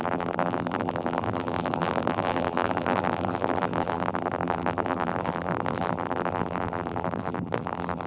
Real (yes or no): no